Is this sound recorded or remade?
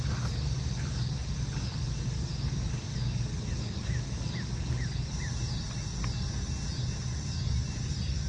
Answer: recorded